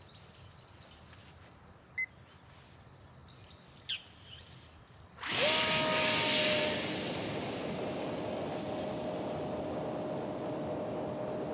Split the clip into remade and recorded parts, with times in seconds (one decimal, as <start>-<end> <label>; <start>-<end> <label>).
0.0-11.5 recorded